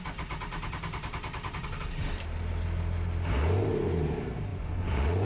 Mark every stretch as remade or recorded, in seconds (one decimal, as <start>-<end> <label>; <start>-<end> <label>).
0.0-4.5 recorded; 4.5-5.3 remade